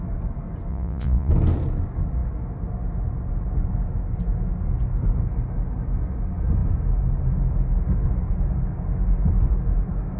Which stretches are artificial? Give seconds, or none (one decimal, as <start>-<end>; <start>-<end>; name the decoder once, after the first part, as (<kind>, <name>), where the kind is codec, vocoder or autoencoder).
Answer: 0.7-1.3 (vocoder, Vocos)